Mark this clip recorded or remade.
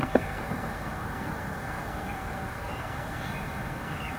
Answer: remade